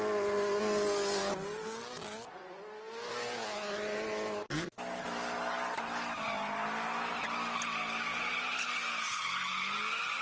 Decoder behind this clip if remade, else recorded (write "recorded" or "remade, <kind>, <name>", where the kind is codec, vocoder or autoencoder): recorded